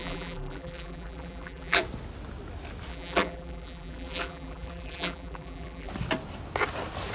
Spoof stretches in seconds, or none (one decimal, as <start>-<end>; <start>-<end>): 0.0-1.8; 2.9-5.9